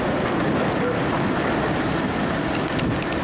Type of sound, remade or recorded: recorded